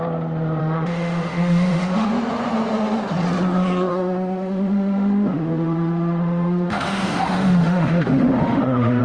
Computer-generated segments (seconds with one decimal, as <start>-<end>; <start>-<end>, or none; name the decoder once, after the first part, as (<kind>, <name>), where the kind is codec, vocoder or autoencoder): 0.6-2.1 (autoencoder, DAC-VAE); 3.9-9.0